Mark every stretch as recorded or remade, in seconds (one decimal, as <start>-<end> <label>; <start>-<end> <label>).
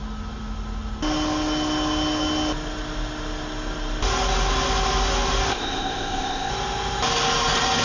0.0-5.5 recorded; 5.5-6.5 remade; 6.5-7.8 recorded